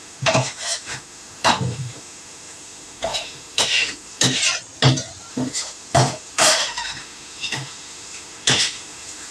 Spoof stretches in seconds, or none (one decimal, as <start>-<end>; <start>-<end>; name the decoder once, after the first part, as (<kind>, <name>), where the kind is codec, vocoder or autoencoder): 0.0-4.4 (autoencoder, DAC-VAE); 5.3-9.3